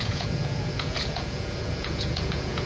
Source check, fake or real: fake